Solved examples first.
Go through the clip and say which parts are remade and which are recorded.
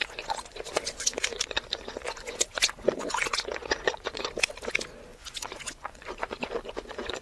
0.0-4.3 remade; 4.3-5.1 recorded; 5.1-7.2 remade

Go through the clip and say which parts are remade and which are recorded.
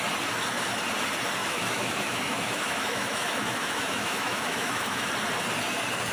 0.0-1.4 recorded; 1.4-5.1 remade; 5.1-6.1 recorded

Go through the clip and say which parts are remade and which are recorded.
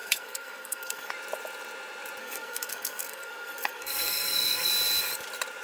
0.0-1.1 remade; 1.1-2.2 recorded; 2.2-4.7 remade; 4.7-5.6 recorded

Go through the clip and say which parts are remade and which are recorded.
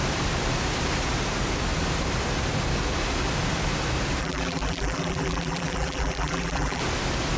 0.0-4.2 recorded; 4.2-6.8 remade; 6.8-7.4 recorded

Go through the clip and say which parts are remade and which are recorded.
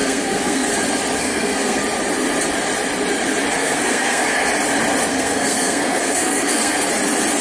0.0-0.7 remade; 0.7-1.2 recorded; 1.2-1.8 remade; 1.8-3.6 recorded; 3.6-4.5 remade; 4.5-5.1 recorded; 5.1-6.9 remade; 6.9-7.4 recorded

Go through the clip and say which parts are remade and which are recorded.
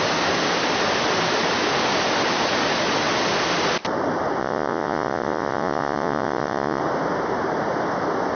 0.0-4.4 recorded; 4.4-6.8 remade; 6.8-8.4 recorded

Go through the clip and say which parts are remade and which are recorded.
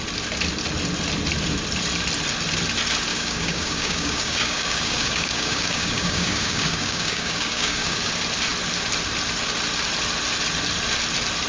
0.0-3.1 recorded; 3.1-8.1 remade; 8.1-11.5 recorded